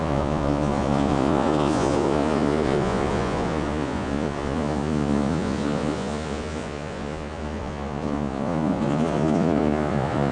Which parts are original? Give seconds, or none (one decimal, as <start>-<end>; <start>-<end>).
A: none